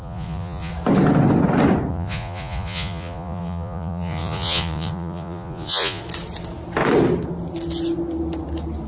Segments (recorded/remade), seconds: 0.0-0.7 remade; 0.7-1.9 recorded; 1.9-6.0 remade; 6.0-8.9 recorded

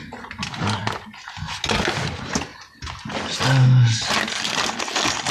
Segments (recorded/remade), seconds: 0.0-5.3 recorded

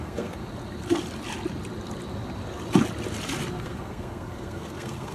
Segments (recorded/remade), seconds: 0.0-0.4 remade; 0.4-3.5 recorded; 3.5-5.1 remade

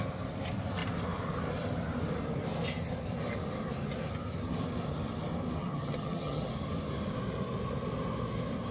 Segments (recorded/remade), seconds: 0.0-5.6 recorded; 5.6-6.5 remade; 6.5-8.7 recorded

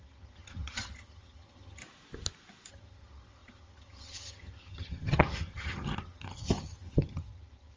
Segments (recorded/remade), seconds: 0.0-1.8 remade; 1.8-2.7 recorded; 2.7-7.8 remade

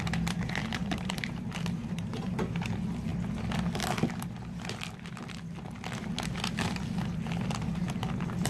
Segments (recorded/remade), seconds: 0.0-0.8 recorded; 0.8-1.4 remade; 1.4-1.8 recorded; 1.8-2.3 remade; 2.3-8.5 recorded

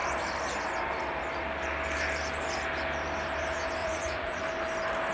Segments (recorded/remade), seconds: 0.0-3.8 recorded; 3.8-4.4 remade; 4.4-5.1 recorded

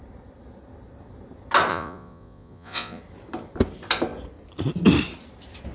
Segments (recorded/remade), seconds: 0.0-1.7 recorded; 1.7-3.0 remade; 3.0-5.7 recorded